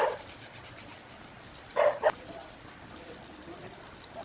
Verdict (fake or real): real